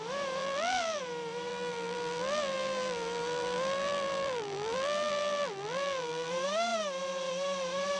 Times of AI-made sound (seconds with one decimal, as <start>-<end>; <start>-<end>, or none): 0.4-1.0; 1.5-6.3